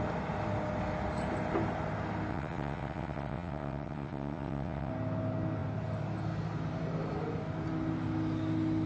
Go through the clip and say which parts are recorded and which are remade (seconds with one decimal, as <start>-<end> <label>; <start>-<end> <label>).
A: 0.0-2.3 recorded; 2.3-4.9 remade; 4.9-8.9 recorded